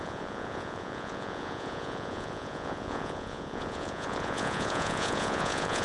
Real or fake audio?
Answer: fake